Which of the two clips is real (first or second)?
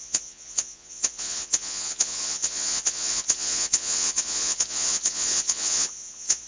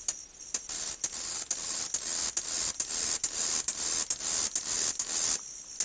second